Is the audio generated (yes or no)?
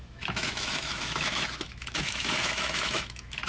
yes